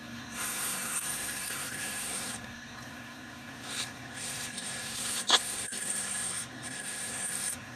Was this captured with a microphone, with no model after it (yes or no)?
no